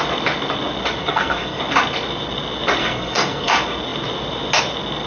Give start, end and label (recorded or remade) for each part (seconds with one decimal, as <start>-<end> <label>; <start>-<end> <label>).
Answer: 0.0-1.0 recorded; 1.0-1.6 remade; 1.6-2.8 recorded; 2.8-3.5 remade; 3.5-5.1 recorded